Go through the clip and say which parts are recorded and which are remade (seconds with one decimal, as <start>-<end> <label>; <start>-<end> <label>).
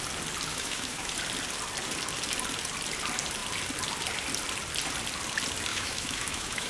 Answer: 0.0-0.5 recorded; 0.5-1.1 remade; 1.1-5.7 recorded; 5.7-6.7 remade